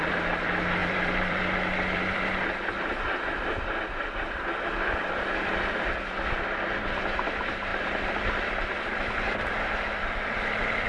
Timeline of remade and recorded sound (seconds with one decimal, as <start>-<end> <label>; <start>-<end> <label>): 0.0-10.9 remade